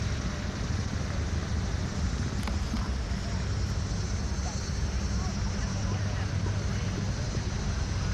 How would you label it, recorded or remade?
recorded